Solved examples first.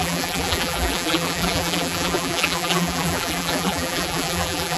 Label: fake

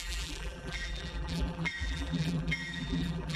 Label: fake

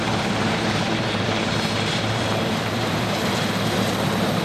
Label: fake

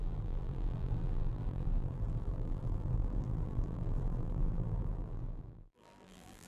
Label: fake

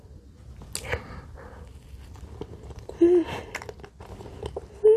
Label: real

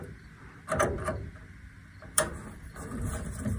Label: fake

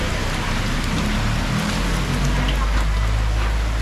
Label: real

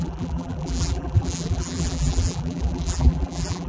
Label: fake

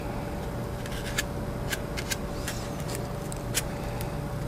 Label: real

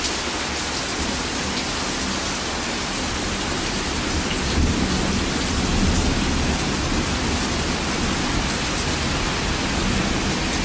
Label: real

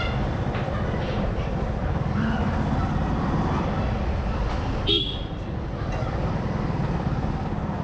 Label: fake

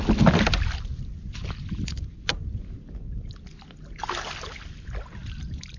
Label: real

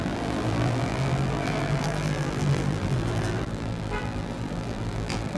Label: fake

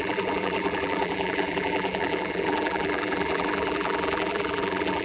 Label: fake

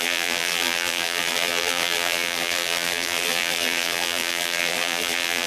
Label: fake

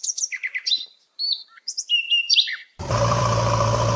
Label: fake